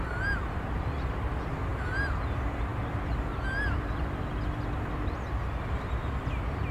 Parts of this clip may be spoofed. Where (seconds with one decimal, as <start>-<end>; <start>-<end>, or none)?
none